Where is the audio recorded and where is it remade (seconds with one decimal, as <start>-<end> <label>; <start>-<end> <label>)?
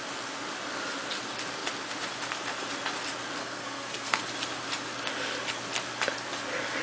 0.0-3.4 recorded; 3.4-4.2 remade; 4.2-6.8 recorded